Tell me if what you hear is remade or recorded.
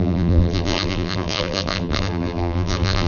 remade